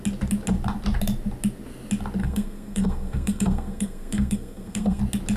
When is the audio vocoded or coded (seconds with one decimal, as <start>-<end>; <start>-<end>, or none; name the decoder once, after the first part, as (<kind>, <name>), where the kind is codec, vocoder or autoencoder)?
2.2-5.0 (codec, SNAC)